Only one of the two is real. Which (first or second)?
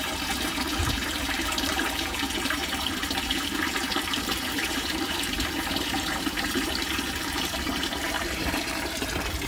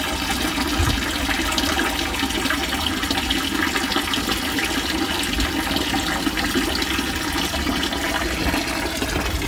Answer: second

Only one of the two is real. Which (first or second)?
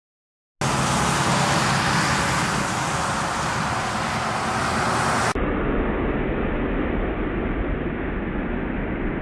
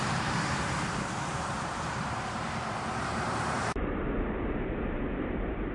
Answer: first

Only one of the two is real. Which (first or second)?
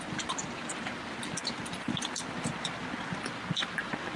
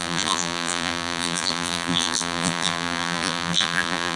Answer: first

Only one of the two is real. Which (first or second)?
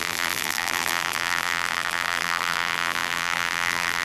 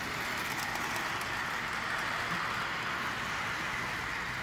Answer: second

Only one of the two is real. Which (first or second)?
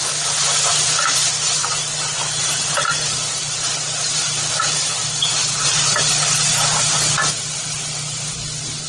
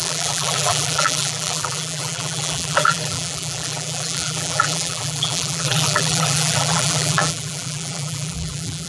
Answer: first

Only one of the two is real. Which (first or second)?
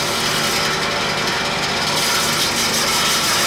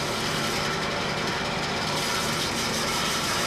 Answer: first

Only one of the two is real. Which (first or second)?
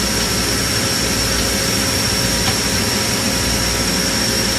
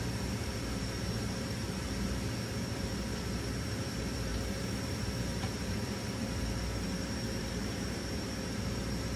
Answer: first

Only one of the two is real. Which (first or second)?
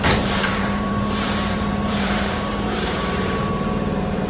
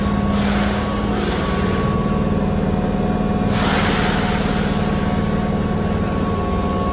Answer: second